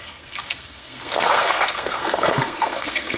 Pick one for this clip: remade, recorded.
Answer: remade